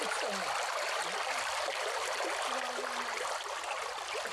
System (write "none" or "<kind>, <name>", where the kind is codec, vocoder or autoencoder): none